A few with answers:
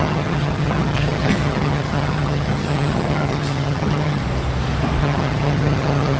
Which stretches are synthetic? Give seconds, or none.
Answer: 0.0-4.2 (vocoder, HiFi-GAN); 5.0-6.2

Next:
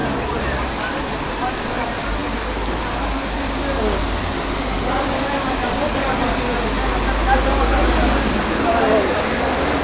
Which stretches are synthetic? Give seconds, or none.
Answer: none

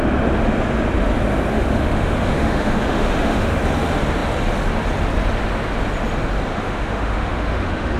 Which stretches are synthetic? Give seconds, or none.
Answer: 1.5-3.6 (autoencoder, DAC-VAE); 6.5-8.0

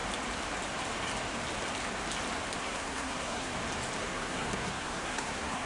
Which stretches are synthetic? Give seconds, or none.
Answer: 2.6-3.5 (codec, SNAC); 4.0-5.7

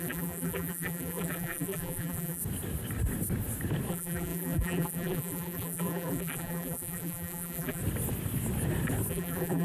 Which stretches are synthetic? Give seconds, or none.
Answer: 0.0-2.4 (vocoder, BigVGAN v2); 3.9-7.8; 9.1-9.6

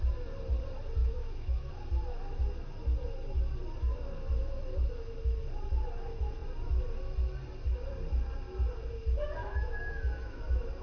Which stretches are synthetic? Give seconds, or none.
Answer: 1.0-1.7 (autoencoder, DAC-VAE); 9.4-10.4

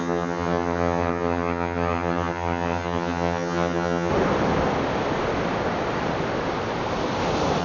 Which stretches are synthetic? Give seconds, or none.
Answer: 0.0-4.1 (vocoder, HiFi-GAN)